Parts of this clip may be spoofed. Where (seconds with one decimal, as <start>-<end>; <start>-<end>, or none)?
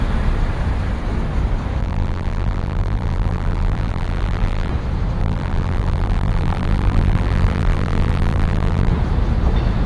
1.8-4.7; 5.2-8.9